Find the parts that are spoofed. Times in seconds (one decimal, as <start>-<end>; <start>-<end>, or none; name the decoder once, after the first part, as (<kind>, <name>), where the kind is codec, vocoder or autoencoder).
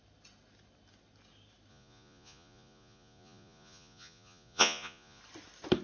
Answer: 1.7-5.2 (vocoder, Vocos)